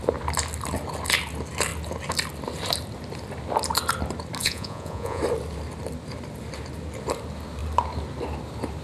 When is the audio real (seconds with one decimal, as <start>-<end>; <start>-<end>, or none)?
0.0-4.4; 5.2-8.8